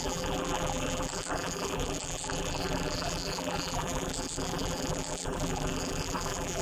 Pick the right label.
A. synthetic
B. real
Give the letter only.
A